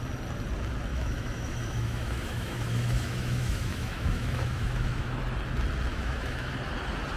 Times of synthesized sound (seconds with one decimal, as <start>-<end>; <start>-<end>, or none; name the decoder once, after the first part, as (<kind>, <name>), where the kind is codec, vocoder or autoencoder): 0.9-5.2 (autoencoder, DAC-VAE); 5.9-6.5